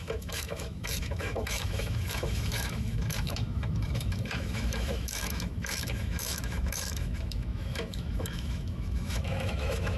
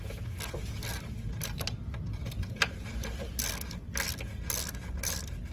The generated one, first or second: first